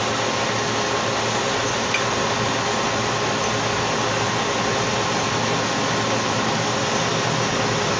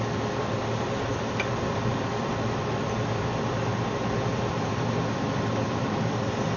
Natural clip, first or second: first